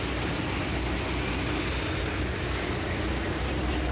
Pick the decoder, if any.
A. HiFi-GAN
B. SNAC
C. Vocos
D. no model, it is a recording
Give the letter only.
D